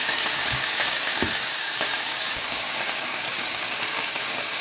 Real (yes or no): no